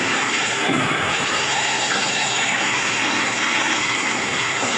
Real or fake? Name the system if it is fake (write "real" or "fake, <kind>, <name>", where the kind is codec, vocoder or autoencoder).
fake, codec, SNAC